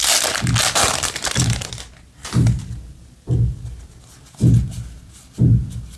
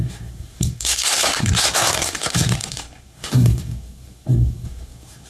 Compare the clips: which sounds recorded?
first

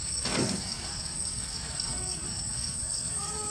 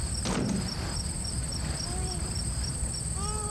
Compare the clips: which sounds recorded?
second